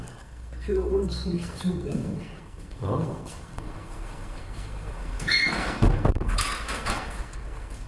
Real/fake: fake